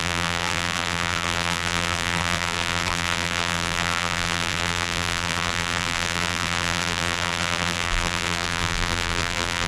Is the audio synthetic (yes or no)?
yes